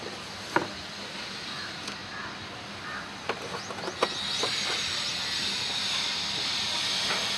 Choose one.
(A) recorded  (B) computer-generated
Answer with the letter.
A